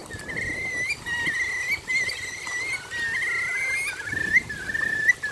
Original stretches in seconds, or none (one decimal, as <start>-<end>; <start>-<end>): 0.0-5.3